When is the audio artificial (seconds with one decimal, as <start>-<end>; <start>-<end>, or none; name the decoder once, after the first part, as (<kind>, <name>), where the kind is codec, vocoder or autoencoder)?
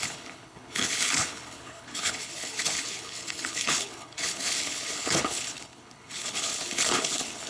0.0-7.5 (codec, HILCodec)